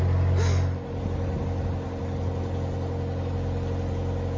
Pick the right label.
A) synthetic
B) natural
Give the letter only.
B